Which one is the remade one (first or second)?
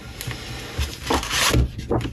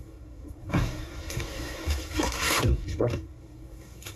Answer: second